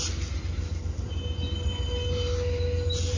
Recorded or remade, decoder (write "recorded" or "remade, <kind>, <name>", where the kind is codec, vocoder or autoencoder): recorded